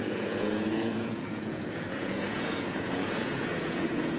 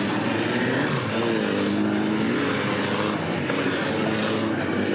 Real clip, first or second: second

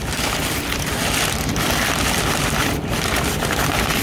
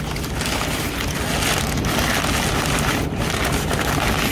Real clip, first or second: second